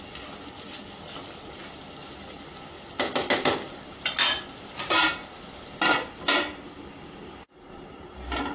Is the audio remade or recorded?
recorded